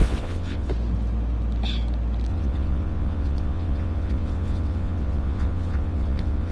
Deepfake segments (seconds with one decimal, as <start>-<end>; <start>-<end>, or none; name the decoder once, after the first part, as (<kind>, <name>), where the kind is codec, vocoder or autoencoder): 0.0-0.7 (vocoder, WaveNeXt); 2.3-6.5